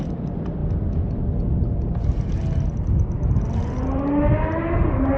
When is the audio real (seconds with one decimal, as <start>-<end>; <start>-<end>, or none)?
0.0-5.2